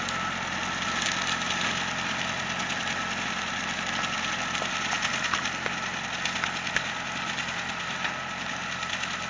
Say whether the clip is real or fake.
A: real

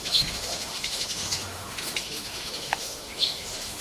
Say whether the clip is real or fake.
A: fake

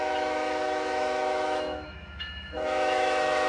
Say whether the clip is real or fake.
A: fake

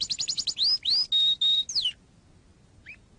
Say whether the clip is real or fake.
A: real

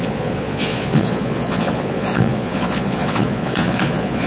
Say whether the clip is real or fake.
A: fake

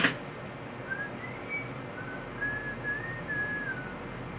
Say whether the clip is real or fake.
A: real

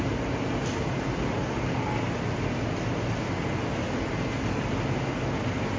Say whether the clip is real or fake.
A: real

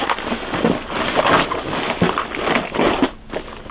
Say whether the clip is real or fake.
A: real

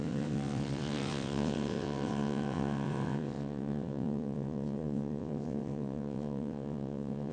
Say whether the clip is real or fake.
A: fake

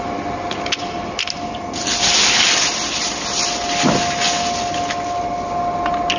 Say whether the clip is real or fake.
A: real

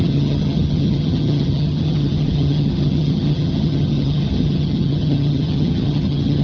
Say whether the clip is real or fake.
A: fake